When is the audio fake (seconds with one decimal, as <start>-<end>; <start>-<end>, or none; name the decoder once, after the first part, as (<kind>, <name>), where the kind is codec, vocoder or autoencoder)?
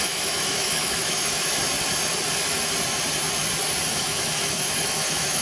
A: 0.0-1.6 (autoencoder, DAC-VAE); 3.9-5.4